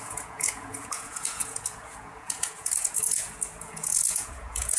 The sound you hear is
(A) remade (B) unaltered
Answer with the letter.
A